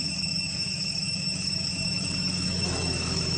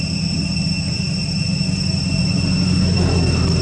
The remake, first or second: first